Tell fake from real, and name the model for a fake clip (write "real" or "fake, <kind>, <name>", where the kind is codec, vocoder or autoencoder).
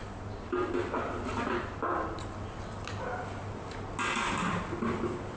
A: real